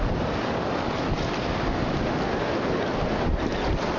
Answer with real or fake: real